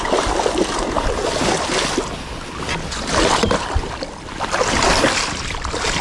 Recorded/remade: recorded